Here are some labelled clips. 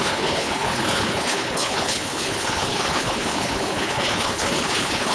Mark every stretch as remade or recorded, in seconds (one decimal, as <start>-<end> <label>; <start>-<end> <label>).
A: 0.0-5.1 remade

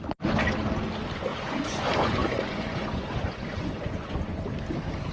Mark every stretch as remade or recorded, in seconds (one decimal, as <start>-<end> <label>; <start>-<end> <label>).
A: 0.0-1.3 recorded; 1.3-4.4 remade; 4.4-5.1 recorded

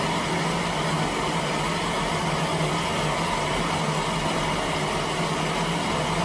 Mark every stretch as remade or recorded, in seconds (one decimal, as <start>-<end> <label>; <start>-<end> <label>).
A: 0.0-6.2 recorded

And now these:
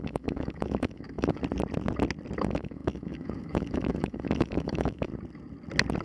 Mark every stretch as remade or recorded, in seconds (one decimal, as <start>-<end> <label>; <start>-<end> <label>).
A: 0.0-1.4 remade; 1.4-2.4 recorded; 2.4-5.1 remade; 5.1-6.0 recorded